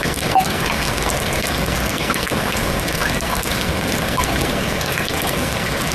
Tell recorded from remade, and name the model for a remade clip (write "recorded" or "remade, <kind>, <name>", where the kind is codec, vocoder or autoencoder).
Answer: remade, codec, SNAC